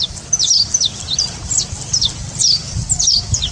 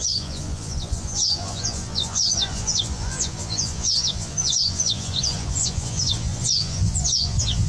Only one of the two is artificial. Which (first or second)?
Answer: second